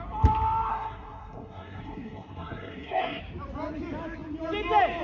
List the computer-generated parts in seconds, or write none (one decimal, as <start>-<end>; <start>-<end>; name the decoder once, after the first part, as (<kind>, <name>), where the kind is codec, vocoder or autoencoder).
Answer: 0.7-3.2 (codec, SNAC)

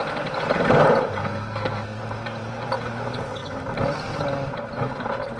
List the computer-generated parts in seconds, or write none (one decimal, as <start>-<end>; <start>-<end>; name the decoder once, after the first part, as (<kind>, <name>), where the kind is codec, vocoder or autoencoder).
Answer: 1.2-2.0 (codec, SNAC)